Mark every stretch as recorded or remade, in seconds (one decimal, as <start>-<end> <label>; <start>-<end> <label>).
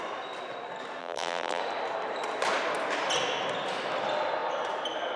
0.0-1.0 recorded; 1.0-1.6 remade; 1.6-5.2 recorded